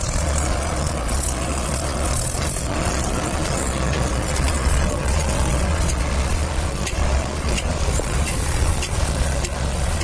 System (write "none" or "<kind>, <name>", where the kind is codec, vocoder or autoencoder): vocoder, Vocos